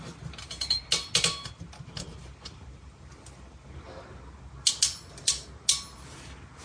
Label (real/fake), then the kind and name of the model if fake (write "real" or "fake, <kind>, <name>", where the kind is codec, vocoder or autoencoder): real